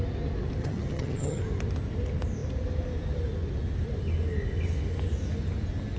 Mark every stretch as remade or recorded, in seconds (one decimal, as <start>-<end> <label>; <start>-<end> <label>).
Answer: 0.0-0.6 recorded; 0.6-1.4 remade; 1.4-6.0 recorded